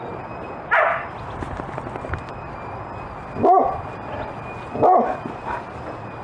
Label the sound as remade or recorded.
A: recorded